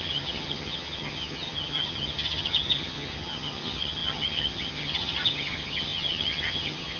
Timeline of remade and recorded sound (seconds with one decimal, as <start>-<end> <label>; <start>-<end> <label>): 0.0-7.0 remade